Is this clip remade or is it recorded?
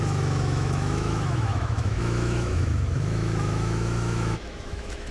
remade